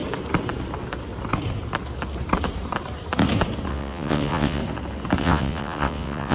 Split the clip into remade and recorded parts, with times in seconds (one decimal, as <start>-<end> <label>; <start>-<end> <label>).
0.0-3.7 recorded; 3.7-4.6 remade; 4.6-5.2 recorded; 5.2-6.3 remade